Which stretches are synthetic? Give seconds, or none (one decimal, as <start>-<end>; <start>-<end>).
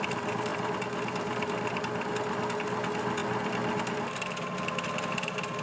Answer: none